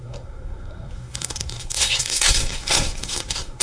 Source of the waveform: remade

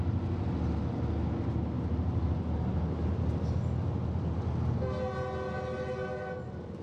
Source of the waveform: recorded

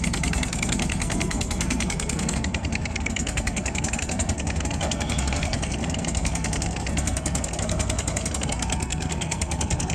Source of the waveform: remade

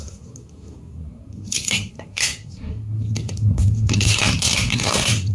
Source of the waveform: remade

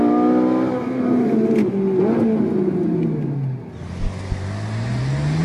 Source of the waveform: recorded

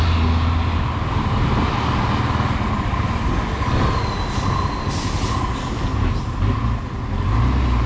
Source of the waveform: recorded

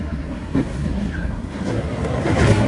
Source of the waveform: remade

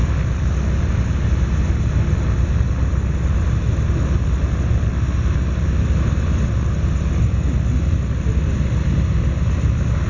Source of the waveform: recorded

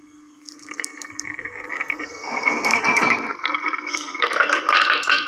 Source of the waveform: remade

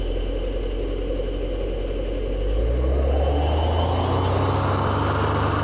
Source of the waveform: recorded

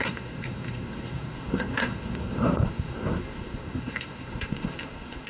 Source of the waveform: remade